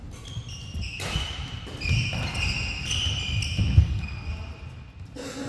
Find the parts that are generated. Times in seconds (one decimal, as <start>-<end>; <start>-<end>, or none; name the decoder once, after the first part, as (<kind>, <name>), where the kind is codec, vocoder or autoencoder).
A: 3.8-4.3 (codec, SNAC)